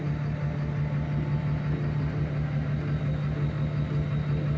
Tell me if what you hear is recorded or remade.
recorded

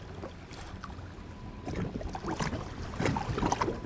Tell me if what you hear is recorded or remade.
recorded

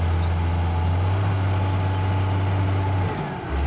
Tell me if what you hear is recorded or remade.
recorded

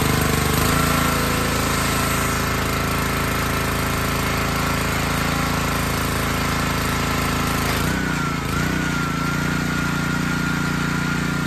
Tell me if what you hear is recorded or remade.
recorded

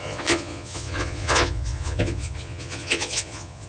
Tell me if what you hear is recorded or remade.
remade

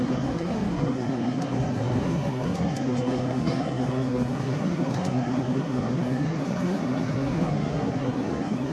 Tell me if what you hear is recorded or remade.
remade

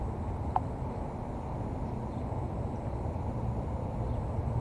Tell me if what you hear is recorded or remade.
recorded